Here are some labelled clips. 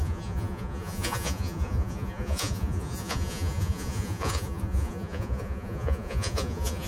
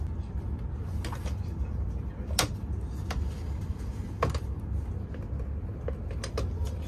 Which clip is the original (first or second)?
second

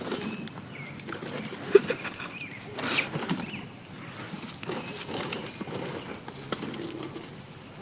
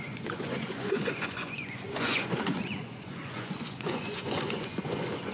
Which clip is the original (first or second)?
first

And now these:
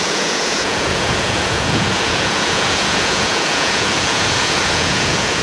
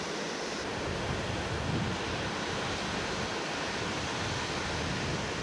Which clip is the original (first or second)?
second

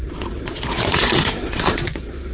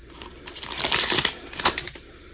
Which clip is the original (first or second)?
second